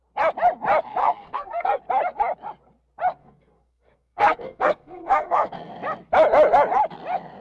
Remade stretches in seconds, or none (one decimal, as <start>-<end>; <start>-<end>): 1.0-1.8; 3.2-5.7